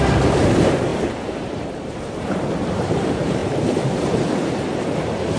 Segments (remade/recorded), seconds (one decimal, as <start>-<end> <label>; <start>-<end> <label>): 0.0-3.4 remade; 3.4-3.9 recorded; 3.9-5.4 remade